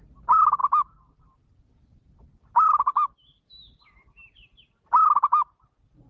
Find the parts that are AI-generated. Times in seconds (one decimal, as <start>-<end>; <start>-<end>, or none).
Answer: none